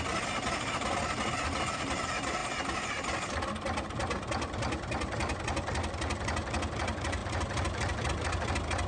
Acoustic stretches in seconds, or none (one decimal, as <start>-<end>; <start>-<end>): 0.0-7.2; 8.1-8.9